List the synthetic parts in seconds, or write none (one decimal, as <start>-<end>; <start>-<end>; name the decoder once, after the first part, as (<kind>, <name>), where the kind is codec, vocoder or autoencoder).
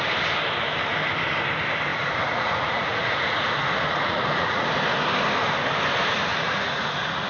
1.9-4.7 (vocoder, Vocos); 6.3-6.8